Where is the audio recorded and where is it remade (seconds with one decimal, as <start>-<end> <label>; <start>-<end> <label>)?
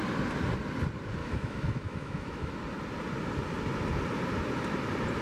0.0-1.2 recorded; 1.2-2.5 remade; 2.5-5.2 recorded